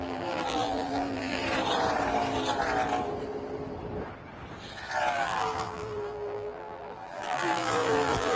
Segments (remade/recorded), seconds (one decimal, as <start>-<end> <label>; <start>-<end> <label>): 0.0-1.4 remade; 1.4-5.1 recorded; 5.1-8.4 remade